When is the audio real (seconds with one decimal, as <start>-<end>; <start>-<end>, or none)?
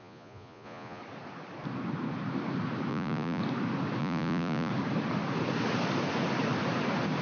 1.0-2.9; 3.4-4.0; 4.7-7.2